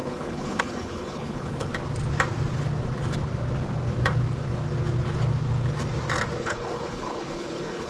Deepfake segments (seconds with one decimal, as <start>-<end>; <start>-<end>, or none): 0.0-1.7; 6.4-7.9